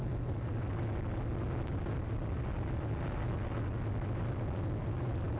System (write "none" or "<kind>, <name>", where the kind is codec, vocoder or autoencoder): none